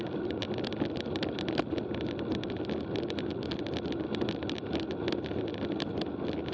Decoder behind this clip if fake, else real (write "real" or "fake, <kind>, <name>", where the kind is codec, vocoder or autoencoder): real